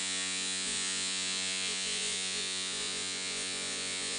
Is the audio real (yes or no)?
no